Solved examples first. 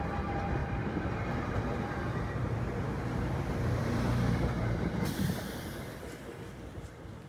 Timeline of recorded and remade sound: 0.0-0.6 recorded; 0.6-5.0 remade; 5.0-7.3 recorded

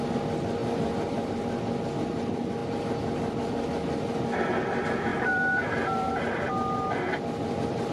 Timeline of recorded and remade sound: 0.0-0.6 recorded; 0.6-1.3 remade; 1.3-5.1 recorded; 5.1-6.1 remade; 6.1-7.9 recorded

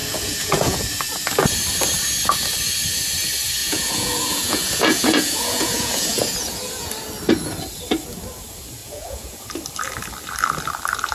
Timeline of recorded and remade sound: 0.0-0.8 remade; 0.8-3.6 recorded; 3.6-6.9 remade; 6.9-8.8 recorded; 8.8-9.4 remade; 9.4-11.1 recorded